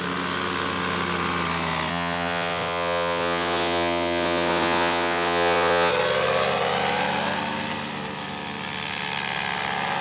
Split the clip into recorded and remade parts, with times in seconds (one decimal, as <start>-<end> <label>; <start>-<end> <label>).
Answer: 0.0-1.9 recorded; 1.9-5.9 remade; 5.9-10.0 recorded